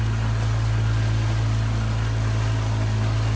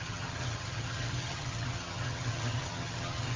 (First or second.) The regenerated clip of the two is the second